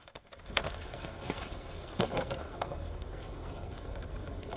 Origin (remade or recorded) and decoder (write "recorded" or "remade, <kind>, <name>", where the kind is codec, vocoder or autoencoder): remade, codec, SNAC